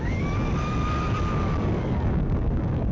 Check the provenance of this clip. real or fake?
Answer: fake